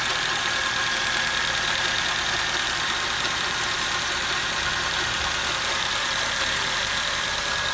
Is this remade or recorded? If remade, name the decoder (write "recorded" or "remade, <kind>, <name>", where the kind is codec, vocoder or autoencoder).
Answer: remade, vocoder, BigVGAN v2